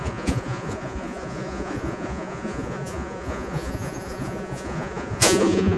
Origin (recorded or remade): remade